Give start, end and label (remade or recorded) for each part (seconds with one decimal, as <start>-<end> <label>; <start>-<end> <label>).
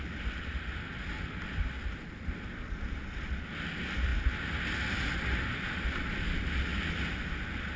0.0-7.8 recorded